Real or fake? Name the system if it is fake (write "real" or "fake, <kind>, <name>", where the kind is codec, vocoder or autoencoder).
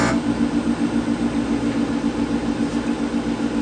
real